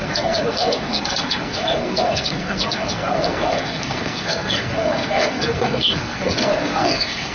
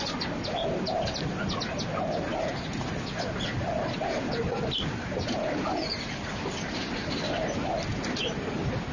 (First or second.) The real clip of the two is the second